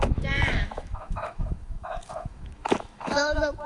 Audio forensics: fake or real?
fake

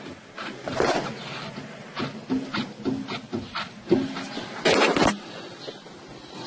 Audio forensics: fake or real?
real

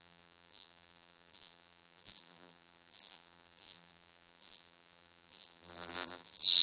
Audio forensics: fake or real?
fake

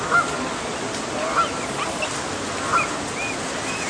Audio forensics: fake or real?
real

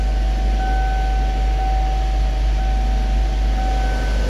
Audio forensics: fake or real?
real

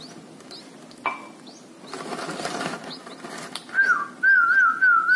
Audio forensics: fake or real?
real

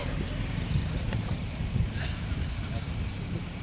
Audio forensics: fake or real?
real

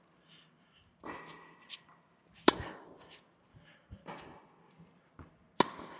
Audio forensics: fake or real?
real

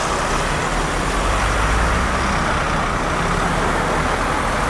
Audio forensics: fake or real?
real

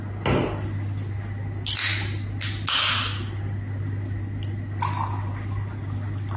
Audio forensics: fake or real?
real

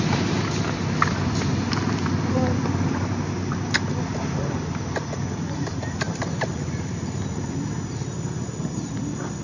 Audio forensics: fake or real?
real